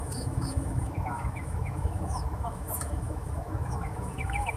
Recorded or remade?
remade